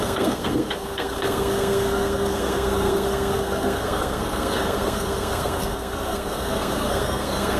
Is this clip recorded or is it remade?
remade